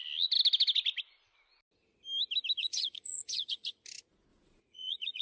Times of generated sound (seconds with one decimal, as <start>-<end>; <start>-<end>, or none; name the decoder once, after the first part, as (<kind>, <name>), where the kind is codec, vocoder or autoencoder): 2.6-3.8 (vocoder, Vocos); 4.3-5.2